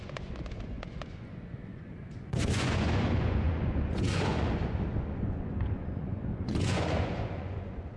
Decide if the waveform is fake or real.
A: fake